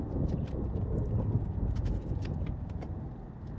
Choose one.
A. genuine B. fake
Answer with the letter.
B